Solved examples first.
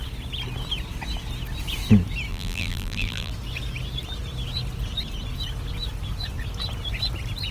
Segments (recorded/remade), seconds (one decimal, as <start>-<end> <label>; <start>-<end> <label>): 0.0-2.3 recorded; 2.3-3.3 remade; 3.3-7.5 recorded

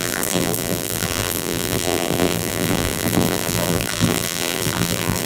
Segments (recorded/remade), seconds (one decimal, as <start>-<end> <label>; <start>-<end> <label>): 0.0-5.2 remade

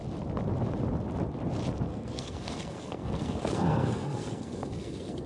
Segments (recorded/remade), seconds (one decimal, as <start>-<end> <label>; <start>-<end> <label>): 0.0-1.9 recorded; 1.9-5.3 remade

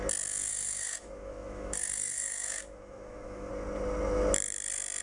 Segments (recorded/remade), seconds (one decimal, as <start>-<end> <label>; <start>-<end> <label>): 0.0-0.5 recorded; 0.5-3.5 remade; 3.5-5.0 recorded

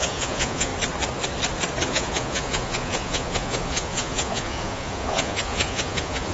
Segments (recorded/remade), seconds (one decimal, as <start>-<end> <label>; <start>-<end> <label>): 0.0-0.7 remade; 0.7-1.9 recorded; 1.9-6.3 remade

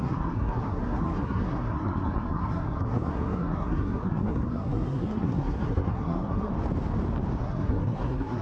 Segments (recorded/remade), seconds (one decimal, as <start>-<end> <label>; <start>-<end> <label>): 0.0-6.5 remade; 6.5-7.4 recorded; 7.4-8.4 remade